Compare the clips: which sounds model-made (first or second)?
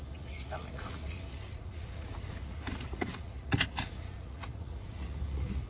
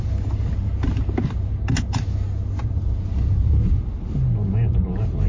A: first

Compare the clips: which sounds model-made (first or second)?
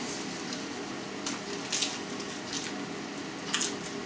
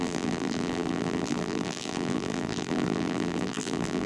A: second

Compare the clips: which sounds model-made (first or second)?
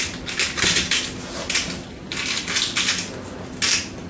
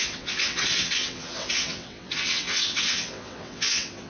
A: second